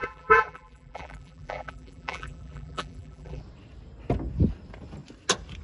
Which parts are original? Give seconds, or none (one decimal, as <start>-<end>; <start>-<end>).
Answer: 3.4-5.6